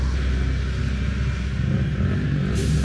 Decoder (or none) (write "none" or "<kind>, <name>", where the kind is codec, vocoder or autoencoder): none